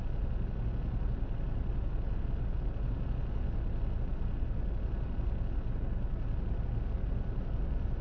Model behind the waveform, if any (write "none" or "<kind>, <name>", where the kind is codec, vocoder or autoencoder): none